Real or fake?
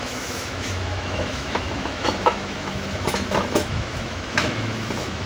fake